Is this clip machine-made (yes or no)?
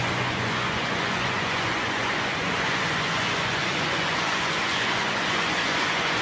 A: yes